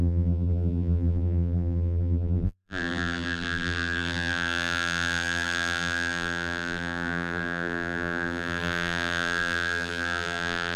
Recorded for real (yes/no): no